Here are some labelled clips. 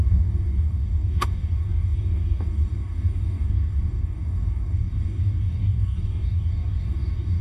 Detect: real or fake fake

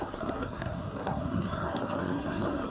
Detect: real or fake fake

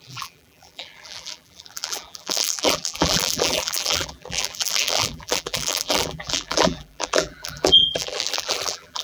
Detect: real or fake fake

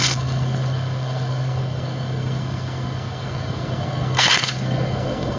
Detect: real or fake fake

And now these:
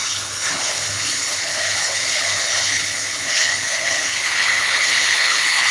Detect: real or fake fake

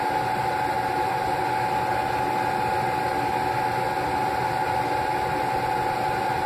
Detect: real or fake real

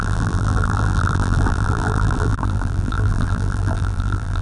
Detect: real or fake fake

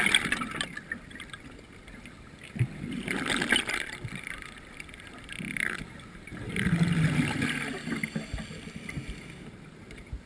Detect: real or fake real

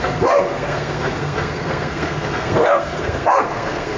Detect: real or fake fake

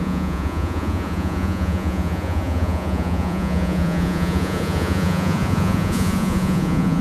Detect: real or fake fake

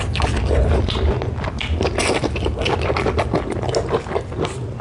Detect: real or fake real